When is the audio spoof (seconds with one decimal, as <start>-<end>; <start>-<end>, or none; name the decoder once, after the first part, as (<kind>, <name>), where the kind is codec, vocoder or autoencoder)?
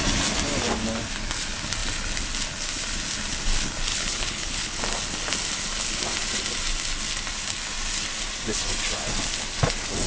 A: 3.9-4.8 (codec, HILCodec)